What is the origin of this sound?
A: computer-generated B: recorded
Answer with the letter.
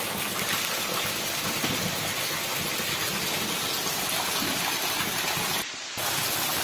B